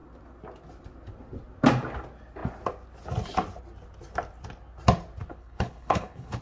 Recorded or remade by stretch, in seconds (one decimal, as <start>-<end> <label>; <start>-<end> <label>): 0.0-5.3 recorded; 5.3-6.4 remade

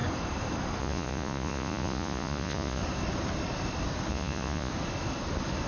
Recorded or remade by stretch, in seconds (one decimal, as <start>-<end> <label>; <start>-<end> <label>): 0.0-0.8 recorded; 0.8-2.8 remade; 2.8-4.1 recorded; 4.1-4.7 remade; 4.7-5.7 recorded

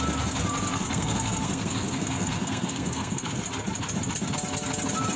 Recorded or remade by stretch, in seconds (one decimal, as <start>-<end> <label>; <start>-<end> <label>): 0.0-0.7 recorded; 0.7-3.3 remade; 3.3-5.2 recorded

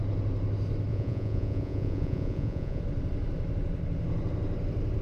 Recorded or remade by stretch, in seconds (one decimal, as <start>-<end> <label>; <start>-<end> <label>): 0.0-0.9 recorded; 0.9-2.8 remade; 2.8-5.0 recorded

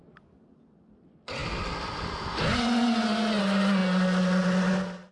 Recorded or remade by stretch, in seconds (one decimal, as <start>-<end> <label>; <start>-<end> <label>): 0.0-5.1 recorded

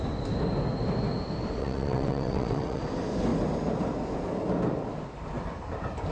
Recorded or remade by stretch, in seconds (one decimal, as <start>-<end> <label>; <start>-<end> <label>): 0.0-1.6 recorded; 1.6-2.8 remade; 2.8-6.1 recorded

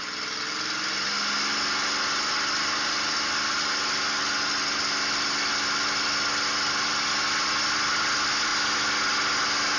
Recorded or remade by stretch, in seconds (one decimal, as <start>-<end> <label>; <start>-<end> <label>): 0.0-9.8 recorded

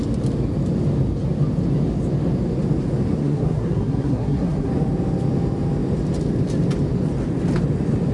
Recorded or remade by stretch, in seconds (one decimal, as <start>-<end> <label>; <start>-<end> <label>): 0.0-3.2 recorded; 3.2-4.7 remade; 4.7-8.1 recorded